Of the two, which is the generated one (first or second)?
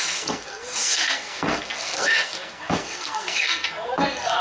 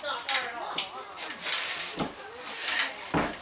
first